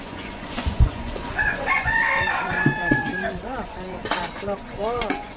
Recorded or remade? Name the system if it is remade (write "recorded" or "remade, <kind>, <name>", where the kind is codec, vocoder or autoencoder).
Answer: remade, vocoder, Vocos